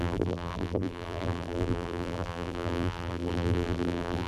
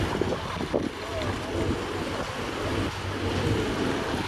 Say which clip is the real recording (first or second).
second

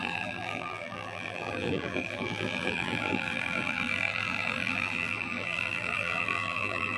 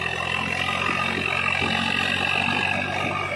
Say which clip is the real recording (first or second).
second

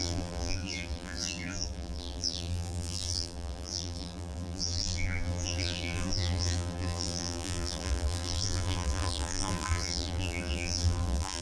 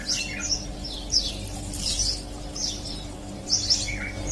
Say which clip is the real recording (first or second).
second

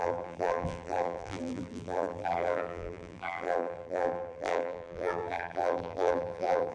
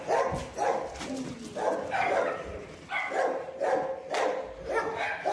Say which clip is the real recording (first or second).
second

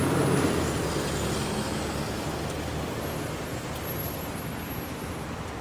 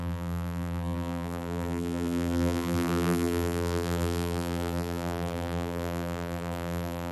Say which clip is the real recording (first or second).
first